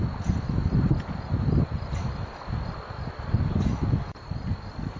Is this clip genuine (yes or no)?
yes